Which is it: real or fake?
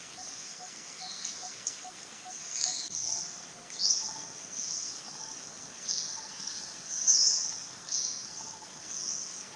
fake